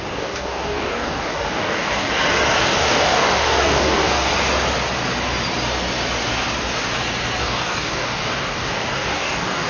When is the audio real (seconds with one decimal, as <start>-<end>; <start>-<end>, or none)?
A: 2.1-2.6; 4.3-7.4